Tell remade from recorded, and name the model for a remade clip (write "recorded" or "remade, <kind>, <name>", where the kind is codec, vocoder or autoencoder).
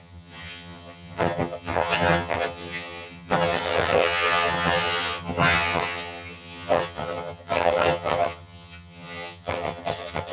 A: remade, vocoder, HiFi-GAN